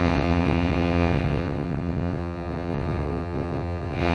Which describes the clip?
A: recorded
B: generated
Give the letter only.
B